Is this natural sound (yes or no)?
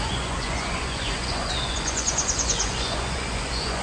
no